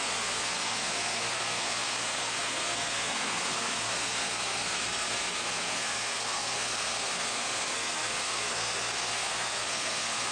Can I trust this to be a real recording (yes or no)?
no